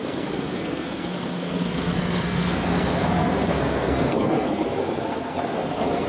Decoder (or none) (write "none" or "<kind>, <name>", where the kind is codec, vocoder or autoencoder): codec, SNAC